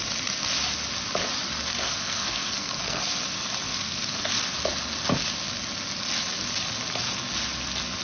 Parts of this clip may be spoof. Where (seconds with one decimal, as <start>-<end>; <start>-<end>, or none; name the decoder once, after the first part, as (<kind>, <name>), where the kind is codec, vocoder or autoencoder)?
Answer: 1.7-3.0 (codec, SNAC); 3.7-4.4